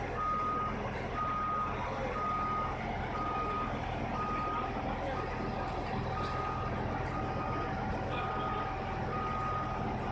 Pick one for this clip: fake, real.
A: real